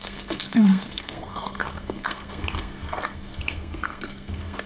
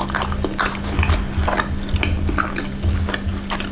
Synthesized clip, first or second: first